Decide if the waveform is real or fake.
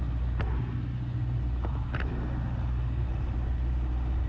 real